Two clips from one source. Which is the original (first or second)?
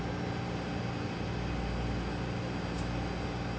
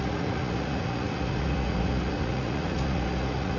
first